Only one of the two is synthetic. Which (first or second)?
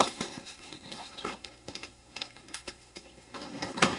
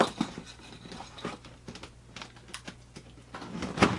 first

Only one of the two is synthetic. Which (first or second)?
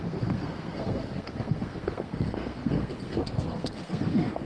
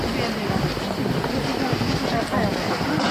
first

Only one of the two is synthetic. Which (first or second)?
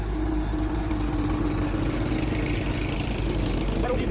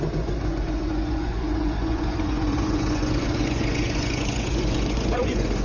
second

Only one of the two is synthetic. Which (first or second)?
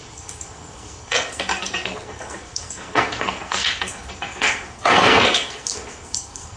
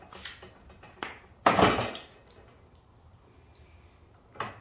first